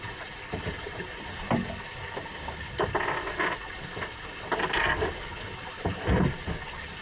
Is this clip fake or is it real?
real